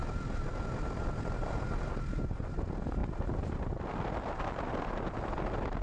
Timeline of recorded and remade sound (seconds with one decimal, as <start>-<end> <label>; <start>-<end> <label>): 0.0-5.8 recorded